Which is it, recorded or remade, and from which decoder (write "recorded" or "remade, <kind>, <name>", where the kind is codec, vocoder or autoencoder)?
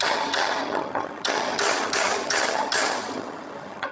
remade, vocoder, HiFi-GAN